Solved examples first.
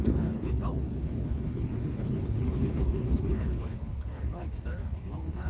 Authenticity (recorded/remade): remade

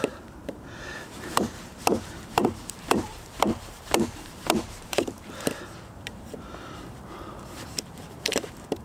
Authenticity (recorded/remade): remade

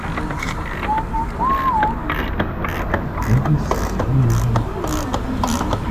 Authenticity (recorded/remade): recorded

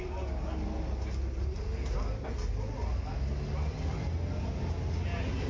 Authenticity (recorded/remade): recorded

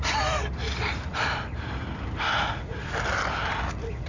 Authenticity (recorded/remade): recorded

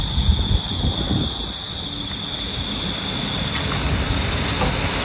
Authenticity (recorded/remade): recorded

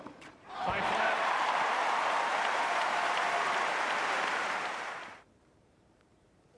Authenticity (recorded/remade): remade